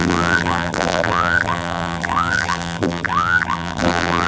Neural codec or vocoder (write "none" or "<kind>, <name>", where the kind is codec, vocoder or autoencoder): vocoder, BigVGAN v2